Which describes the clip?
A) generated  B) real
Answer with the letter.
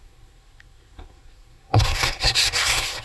A